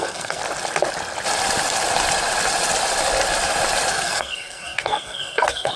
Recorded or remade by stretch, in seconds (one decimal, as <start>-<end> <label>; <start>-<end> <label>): 0.0-0.4 remade; 0.4-3.9 recorded; 3.9-5.8 remade